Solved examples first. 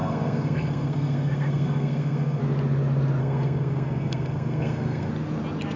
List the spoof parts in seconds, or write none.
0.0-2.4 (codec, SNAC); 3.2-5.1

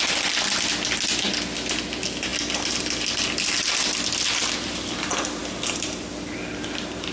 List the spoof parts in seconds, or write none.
none

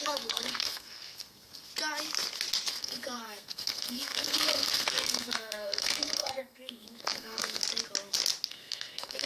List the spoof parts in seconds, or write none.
0.0-1.7 (codec, SNAC); 2.7-7.6; 8.5-9.3

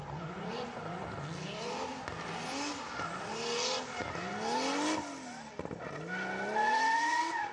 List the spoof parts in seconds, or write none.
none

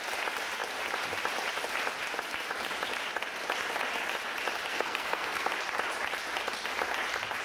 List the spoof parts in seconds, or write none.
4.7-5.5 (codec, SNAC)

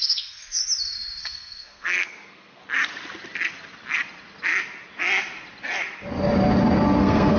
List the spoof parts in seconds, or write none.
0.0-0.6 (codec, SNAC); 1.2-2.6; 7.0-7.4

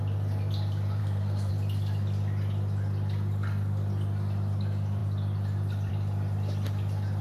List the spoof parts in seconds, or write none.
1.0-1.5 (codec, SNAC)

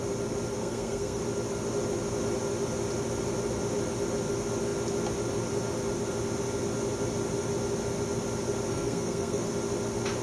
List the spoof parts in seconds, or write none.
0.6-1.2 (codec, SNAC); 8.7-9.5